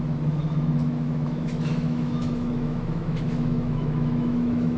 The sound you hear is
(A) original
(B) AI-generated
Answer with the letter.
B